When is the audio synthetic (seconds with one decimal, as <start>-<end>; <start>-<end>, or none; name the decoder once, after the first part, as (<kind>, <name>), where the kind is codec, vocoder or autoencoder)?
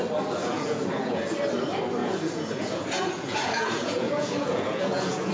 0.4-1.2 (vocoder, Vocos); 2.0-5.3